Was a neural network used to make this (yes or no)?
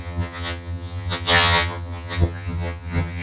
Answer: yes